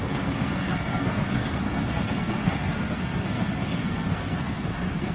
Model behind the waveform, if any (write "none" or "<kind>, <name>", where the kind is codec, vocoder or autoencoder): codec, SNAC